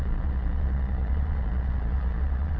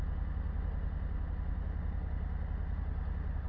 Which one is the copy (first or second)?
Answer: first